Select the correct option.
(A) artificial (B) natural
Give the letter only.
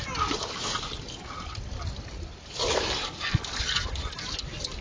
B